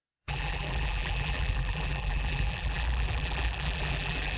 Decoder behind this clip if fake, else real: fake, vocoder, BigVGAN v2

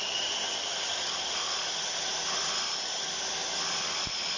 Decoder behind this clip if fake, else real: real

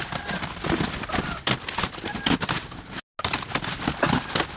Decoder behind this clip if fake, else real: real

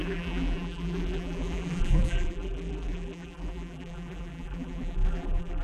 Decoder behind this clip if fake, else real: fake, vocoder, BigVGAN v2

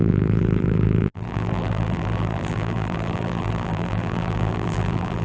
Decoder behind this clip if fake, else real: fake, vocoder, BigVGAN v2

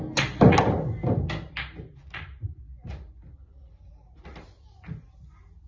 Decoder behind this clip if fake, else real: real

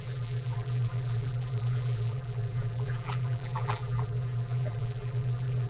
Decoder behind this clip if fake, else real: fake, vocoder, BigVGAN v2